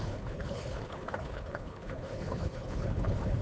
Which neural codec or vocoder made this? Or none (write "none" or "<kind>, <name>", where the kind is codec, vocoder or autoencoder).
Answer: codec, HILCodec